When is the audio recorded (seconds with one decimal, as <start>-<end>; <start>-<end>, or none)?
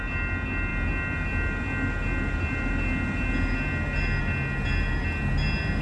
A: 0.0-5.8